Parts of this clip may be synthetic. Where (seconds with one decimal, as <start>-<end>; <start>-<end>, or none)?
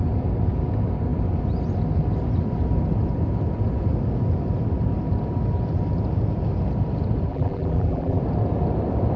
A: 7.3-8.2